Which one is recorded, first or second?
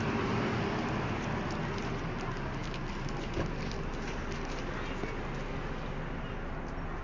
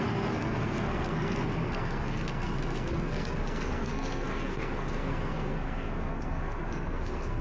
first